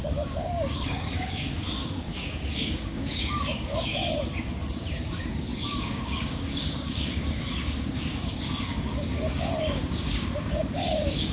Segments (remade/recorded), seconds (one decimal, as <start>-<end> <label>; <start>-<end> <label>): 0.0-3.9 remade; 3.9-4.9 recorded; 4.9-11.3 remade